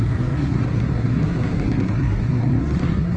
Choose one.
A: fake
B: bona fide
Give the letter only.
A